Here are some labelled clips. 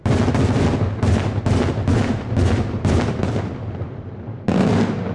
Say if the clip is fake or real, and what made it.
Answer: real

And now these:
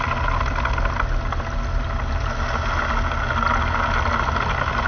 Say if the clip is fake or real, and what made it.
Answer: real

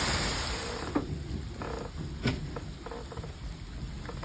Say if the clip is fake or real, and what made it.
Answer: real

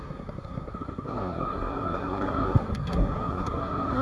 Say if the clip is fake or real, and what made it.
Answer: fake, codec, SNAC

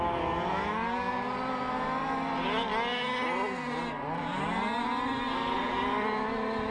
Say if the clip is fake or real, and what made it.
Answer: real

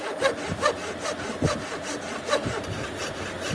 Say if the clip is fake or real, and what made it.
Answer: real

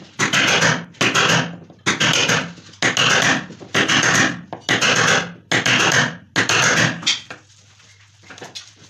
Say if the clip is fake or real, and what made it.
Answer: real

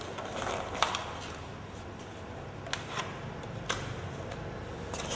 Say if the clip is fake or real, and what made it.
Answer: real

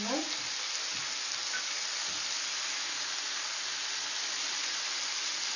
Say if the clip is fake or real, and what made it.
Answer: real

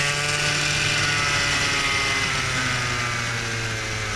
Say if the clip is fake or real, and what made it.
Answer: real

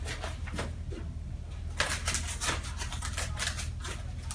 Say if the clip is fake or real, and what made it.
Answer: real